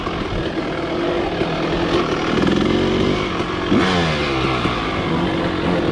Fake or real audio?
real